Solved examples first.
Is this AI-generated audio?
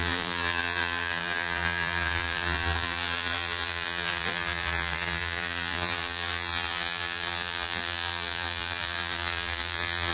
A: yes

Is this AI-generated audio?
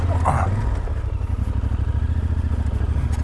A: no